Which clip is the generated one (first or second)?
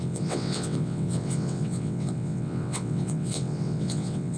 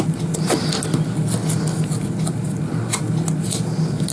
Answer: first